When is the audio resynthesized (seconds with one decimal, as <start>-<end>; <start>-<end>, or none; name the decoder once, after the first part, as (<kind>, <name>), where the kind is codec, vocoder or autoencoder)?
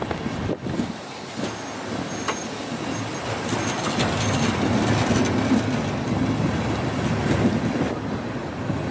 none